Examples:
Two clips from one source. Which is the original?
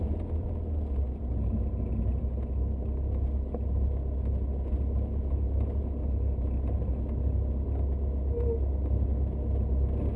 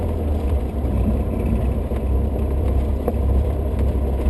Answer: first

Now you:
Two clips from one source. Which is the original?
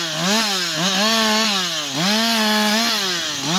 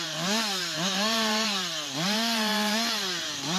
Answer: first